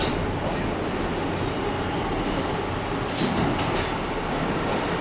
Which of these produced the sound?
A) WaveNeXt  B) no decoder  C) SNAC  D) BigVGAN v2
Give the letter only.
B